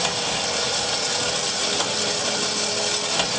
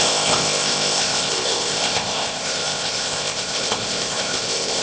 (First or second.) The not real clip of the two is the second